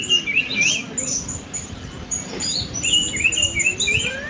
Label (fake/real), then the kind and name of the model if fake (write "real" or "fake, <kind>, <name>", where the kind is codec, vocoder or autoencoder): real